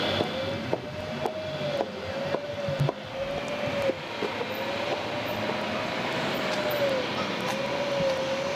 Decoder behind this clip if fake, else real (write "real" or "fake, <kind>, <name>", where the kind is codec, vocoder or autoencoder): real